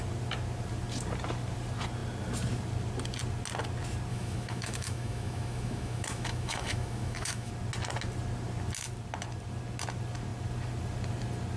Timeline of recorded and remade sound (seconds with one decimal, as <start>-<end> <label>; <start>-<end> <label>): 0.0-4.1 recorded; 4.1-7.5 remade; 7.5-11.6 recorded